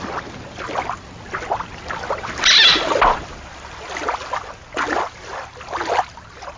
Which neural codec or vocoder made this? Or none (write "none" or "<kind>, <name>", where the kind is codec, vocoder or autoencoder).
none